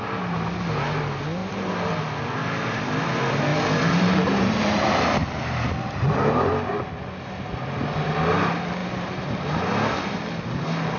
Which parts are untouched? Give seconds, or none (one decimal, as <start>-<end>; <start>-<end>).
0.0-3.5; 6.8-8.8; 9.7-11.0